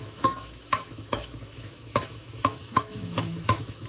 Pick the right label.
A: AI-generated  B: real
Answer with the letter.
A